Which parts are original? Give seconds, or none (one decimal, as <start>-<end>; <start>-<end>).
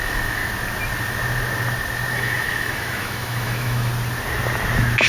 0.4-2.1; 3.9-5.1